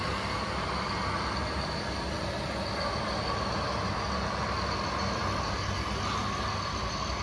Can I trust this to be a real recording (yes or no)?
yes